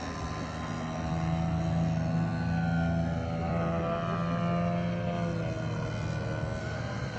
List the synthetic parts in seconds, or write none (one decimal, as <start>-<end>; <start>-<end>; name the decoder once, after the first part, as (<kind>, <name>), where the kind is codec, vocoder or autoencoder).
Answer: 6.6-7.2 (codec, SNAC)